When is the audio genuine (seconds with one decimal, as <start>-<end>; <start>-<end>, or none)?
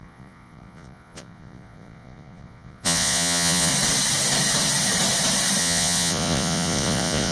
3.7-5.6